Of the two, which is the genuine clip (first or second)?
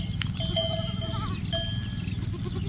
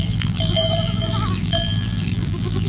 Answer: first